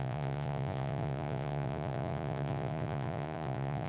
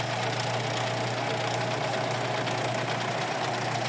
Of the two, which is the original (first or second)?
second